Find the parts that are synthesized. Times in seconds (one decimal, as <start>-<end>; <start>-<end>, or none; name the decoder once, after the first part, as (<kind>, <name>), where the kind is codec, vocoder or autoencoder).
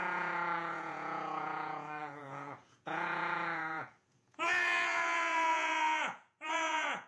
0.0-7.1 (vocoder, Vocos)